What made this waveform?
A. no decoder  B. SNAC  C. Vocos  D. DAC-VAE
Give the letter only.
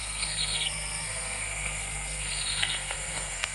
B